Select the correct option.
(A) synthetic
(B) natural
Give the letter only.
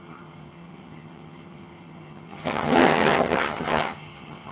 A